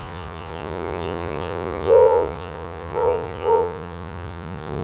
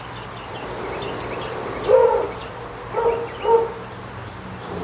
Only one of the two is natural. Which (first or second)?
second